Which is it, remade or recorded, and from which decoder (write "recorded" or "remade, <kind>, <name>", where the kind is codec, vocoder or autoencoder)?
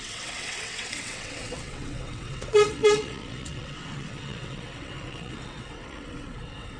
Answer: remade, vocoder, WaveNeXt